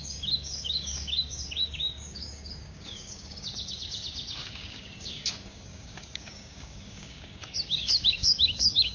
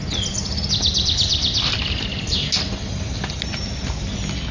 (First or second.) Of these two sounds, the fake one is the first